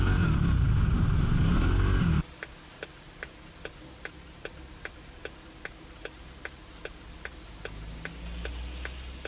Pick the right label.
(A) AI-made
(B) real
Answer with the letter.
B